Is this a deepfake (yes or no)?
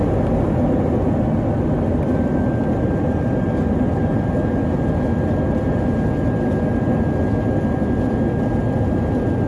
no